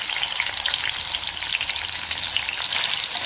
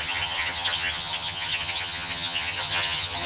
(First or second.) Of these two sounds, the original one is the first